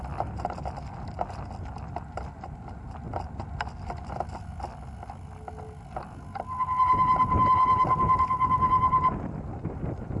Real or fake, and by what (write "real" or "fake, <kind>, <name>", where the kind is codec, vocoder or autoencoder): real